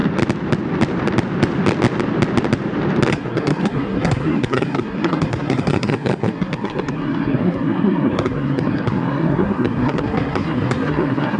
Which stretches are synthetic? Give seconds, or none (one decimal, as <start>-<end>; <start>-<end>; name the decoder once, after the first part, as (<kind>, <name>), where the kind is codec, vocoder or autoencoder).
3.1-11.4 (codec, SNAC)